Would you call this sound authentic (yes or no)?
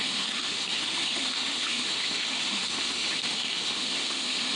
no